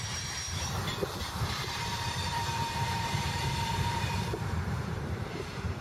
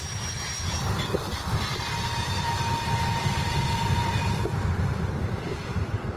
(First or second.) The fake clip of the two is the first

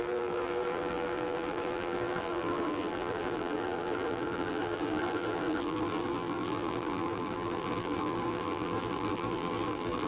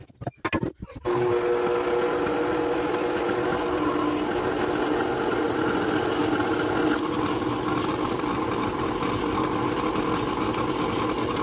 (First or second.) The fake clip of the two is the first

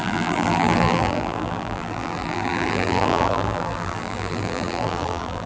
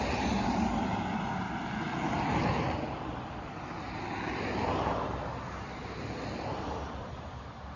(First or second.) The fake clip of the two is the first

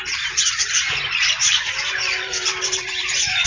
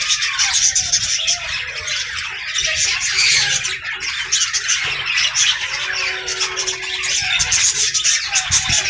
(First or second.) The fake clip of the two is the first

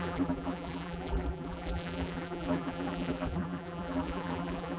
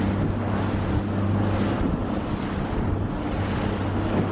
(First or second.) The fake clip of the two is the first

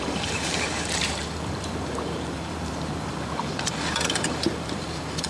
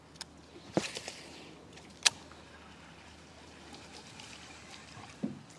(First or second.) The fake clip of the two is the first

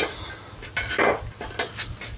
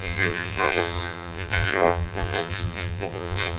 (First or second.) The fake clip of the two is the second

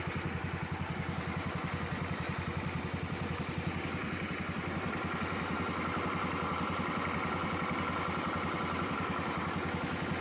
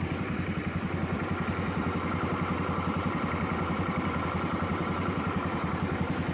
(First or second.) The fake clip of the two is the second